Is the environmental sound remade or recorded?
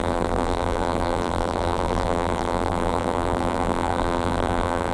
remade